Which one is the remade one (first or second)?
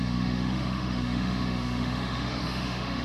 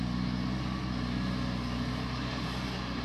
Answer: first